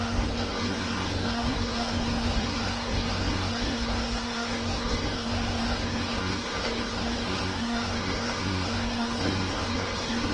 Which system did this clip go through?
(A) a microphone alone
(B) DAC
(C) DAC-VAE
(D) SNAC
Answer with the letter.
D